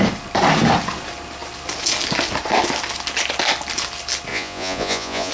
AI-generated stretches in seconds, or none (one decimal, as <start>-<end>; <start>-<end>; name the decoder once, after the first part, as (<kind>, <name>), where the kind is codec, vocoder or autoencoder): 4.3-5.3 (vocoder, Vocos)